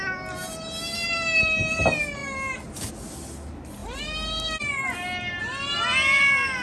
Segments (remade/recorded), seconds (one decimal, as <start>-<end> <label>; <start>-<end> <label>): 0.0-6.6 recorded